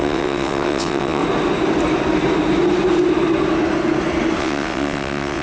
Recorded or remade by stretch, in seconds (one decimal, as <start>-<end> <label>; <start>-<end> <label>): 0.0-1.2 remade; 1.2-4.4 recorded; 4.4-5.4 remade